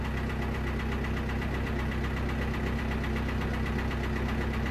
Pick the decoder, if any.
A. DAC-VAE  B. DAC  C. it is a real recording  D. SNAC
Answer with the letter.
C